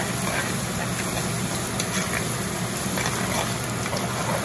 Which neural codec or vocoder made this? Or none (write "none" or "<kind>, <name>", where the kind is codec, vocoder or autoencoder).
none